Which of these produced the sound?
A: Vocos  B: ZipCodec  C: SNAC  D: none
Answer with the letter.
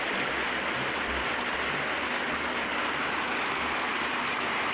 D